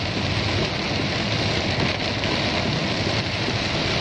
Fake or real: real